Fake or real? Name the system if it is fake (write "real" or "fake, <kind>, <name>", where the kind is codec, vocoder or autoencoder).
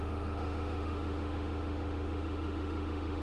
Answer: fake, autoencoder, DAC-VAE